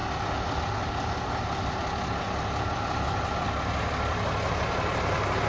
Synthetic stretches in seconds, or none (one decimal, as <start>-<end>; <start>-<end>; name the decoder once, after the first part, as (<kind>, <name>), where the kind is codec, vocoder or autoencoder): none